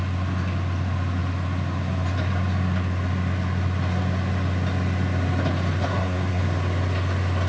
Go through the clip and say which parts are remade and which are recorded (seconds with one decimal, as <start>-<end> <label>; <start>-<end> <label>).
0.0-5.9 recorded; 5.9-6.4 remade; 6.4-7.5 recorded